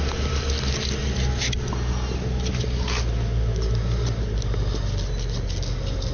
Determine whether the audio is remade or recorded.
recorded